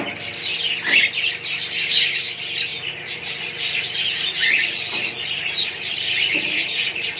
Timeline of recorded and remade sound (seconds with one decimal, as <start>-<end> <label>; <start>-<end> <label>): 0.0-2.7 recorded; 2.7-7.2 remade